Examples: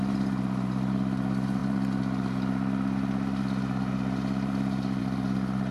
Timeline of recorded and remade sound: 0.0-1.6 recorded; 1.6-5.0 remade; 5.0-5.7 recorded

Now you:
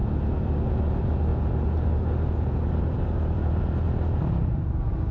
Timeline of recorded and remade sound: 0.0-5.1 recorded